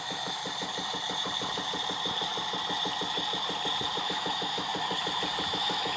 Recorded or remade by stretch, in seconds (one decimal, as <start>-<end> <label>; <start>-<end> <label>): 0.0-0.4 remade; 0.4-4.0 recorded; 4.0-4.7 remade; 4.7-5.5 recorded; 5.5-6.0 remade